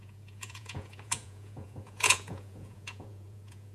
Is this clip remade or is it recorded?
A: remade